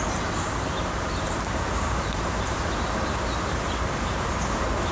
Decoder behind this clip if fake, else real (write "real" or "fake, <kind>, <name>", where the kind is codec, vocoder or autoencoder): fake, vocoder, BigVGAN v2